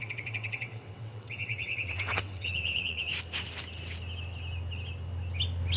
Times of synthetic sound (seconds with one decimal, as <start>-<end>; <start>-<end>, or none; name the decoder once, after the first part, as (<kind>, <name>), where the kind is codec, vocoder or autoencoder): 0.0-3.1 (vocoder, WaveNeXt)